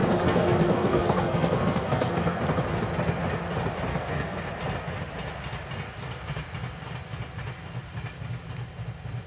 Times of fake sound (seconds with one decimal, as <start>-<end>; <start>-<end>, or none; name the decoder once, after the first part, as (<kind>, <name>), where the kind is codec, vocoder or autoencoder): 0.0-2.4 (codec, SNAC); 3.9-4.5